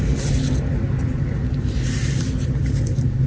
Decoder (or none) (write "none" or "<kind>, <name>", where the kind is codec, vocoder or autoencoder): none